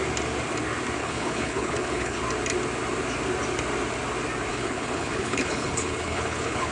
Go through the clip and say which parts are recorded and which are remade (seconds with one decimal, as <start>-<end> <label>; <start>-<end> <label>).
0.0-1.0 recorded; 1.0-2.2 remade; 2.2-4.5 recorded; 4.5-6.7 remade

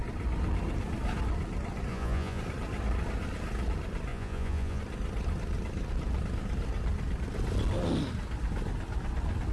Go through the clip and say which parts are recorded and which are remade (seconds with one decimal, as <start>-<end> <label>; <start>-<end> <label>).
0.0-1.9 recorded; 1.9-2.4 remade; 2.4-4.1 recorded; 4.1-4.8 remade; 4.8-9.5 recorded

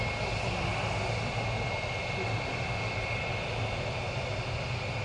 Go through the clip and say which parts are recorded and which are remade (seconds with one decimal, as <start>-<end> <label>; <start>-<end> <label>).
0.0-5.0 recorded